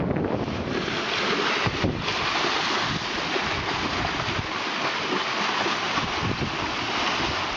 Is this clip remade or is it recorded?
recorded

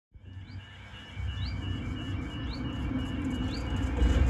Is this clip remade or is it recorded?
recorded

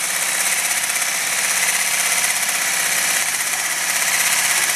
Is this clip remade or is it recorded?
remade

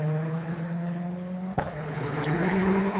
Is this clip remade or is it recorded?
remade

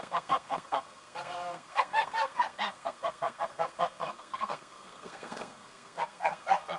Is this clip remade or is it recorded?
remade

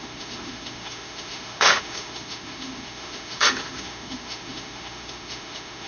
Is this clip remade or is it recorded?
remade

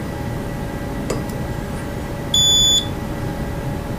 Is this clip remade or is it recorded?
recorded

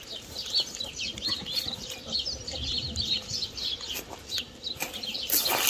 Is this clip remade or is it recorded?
recorded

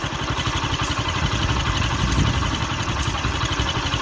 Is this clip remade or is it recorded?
recorded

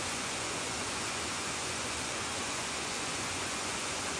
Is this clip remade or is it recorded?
remade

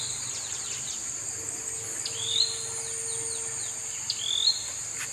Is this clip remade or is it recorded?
recorded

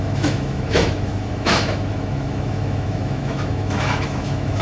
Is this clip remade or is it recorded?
remade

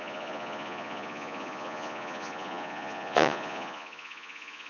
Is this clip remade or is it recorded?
remade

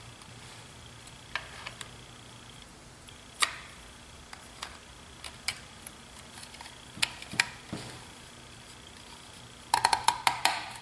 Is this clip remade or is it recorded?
recorded